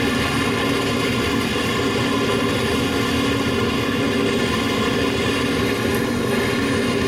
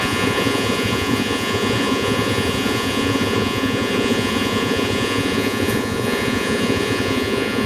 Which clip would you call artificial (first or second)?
second